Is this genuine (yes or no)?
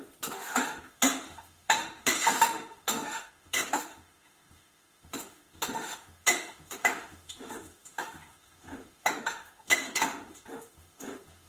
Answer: no